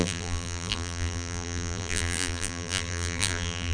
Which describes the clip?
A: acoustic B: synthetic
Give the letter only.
B